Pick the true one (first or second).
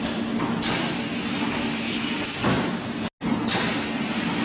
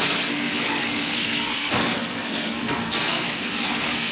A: first